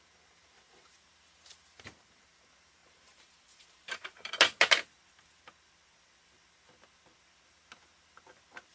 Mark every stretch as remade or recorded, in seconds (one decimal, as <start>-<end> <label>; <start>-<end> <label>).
0.0-2.8 recorded; 2.8-4.3 remade; 4.3-8.7 recorded